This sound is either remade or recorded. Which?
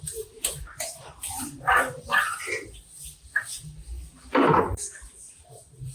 recorded